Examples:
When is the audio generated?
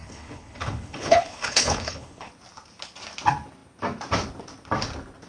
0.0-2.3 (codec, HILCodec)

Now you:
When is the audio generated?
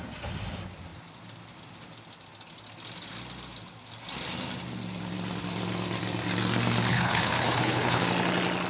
6.9-8.0 (codec, HILCodec)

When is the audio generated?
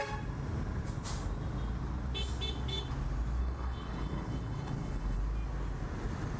3.4-5.2 (codec, HILCodec)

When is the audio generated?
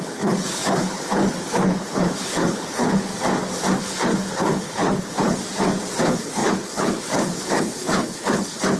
0.0-3.1 (codec, HILCodec); 3.8-5.4; 6.0-8.8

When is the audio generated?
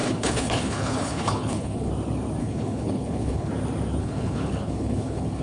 0.0-1.9 (codec, HILCodec); 2.4-3.5; 4.0-5.4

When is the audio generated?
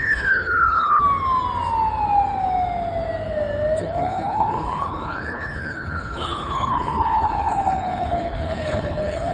0.0-1.0 (codec, HILCodec); 3.8-9.3